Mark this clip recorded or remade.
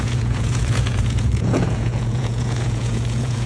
remade